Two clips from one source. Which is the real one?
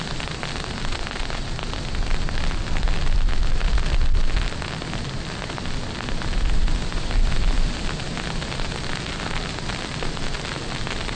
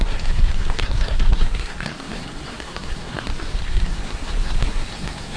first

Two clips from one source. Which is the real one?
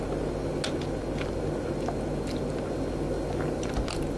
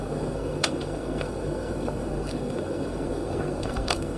first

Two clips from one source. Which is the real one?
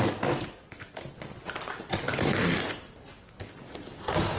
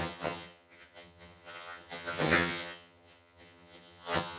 first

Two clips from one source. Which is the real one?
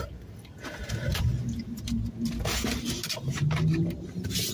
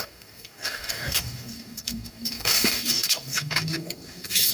first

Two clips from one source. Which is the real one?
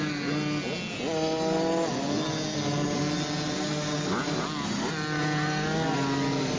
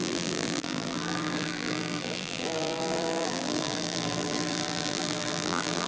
first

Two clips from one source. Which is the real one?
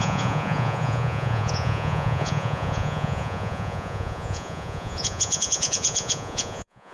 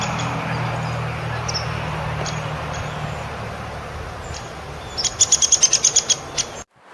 second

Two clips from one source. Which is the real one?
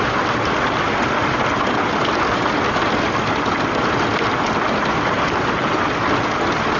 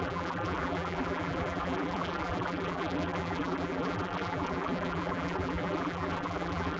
first